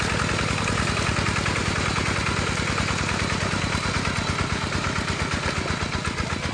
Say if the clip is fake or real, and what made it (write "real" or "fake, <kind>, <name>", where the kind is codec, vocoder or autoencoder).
real